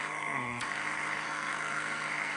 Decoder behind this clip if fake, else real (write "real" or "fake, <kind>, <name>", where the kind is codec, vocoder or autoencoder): fake, codec, SNAC